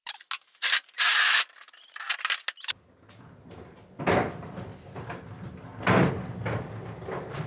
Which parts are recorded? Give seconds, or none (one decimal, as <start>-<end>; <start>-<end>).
0.0-7.5

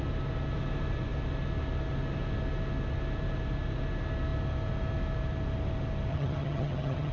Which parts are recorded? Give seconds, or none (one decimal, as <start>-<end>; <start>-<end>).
0.0-6.1